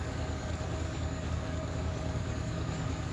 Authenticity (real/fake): fake